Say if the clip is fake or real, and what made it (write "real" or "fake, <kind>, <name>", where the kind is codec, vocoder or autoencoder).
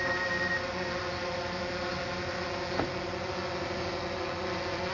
real